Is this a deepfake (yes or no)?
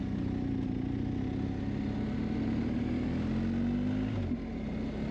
no